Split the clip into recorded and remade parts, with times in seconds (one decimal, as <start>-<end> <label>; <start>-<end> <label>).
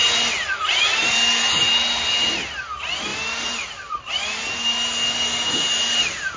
0.0-6.4 recorded